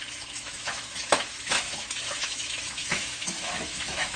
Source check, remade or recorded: remade